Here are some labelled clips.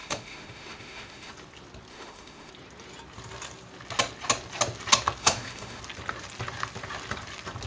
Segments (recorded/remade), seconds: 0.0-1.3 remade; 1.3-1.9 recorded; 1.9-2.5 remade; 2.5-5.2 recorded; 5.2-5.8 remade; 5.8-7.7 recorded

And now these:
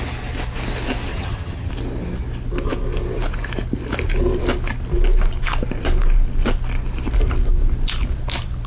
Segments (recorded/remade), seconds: 0.0-1.1 recorded; 1.1-1.7 remade; 1.7-8.7 recorded

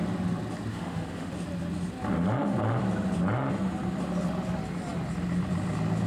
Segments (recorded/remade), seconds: 0.0-0.7 recorded; 0.7-1.3 remade; 1.3-6.1 recorded